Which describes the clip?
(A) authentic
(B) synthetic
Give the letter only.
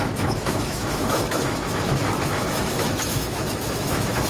B